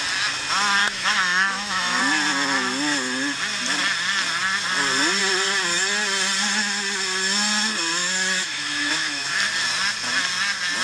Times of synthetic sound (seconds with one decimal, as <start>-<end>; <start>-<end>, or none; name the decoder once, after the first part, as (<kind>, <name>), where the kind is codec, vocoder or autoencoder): 0.8-2.0 (autoencoder, DAC-VAE); 8.0-9.3